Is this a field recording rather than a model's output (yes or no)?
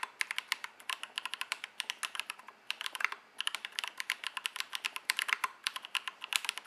yes